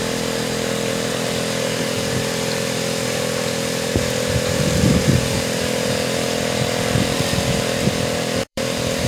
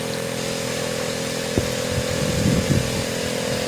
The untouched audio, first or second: second